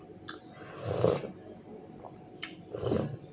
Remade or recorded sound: recorded